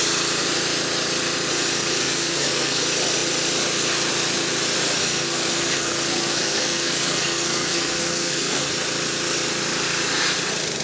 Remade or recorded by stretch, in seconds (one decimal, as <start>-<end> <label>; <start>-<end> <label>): 0.0-2.0 recorded; 2.0-2.8 remade; 2.8-5.0 recorded; 5.0-8.7 remade; 8.7-10.8 recorded